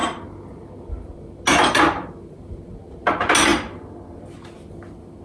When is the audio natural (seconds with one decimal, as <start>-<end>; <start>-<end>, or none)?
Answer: 0.0-5.2